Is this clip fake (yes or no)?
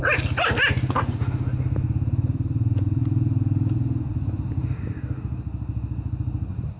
no